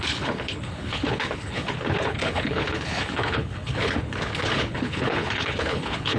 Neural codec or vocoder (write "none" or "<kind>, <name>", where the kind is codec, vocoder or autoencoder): codec, HILCodec